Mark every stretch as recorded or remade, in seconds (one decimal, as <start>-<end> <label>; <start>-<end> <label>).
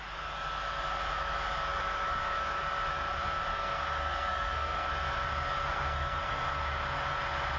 0.0-3.5 recorded; 3.5-4.9 remade; 4.9-5.6 recorded; 5.6-6.6 remade; 6.6-7.6 recorded